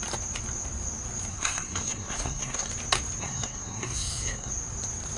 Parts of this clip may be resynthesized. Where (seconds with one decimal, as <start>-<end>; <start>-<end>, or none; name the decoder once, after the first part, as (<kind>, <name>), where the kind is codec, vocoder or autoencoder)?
1.3-2.7 (codec, SNAC); 3.2-4.5